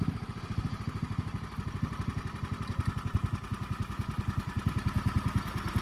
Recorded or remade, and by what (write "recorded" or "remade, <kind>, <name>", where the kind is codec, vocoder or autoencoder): recorded